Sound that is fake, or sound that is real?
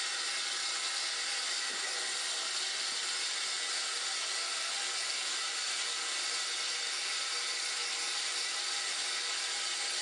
real